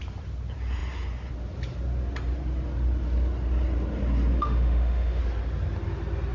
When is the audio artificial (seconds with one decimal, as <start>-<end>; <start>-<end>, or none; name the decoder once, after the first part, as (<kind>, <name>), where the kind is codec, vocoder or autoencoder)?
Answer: 4.3-5.2 (autoencoder, DAC-VAE)